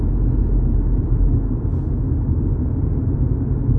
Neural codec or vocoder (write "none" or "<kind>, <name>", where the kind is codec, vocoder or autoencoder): none